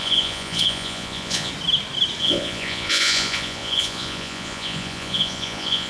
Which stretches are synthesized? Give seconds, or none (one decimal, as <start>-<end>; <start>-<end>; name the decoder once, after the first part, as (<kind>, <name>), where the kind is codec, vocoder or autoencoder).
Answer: 0.0-1.5 (vocoder, Vocos); 2.2-5.9